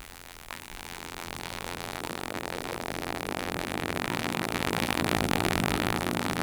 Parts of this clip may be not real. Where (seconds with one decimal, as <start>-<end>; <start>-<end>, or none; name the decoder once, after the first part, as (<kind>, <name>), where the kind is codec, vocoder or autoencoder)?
0.0-6.4 (vocoder, BigVGAN v2)